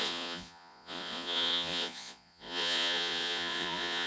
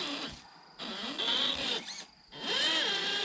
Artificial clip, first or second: first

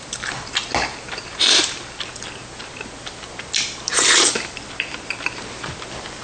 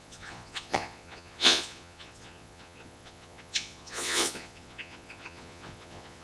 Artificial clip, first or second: second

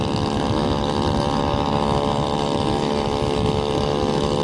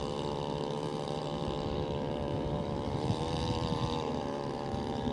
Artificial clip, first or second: second